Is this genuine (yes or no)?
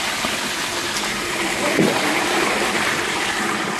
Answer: no